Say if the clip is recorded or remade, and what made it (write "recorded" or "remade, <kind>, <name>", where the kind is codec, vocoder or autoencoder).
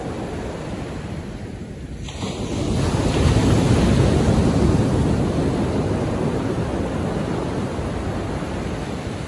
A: recorded